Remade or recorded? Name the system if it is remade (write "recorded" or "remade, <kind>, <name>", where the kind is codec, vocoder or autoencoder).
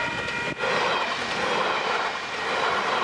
recorded